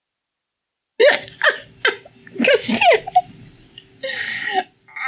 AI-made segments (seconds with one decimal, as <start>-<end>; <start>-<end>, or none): none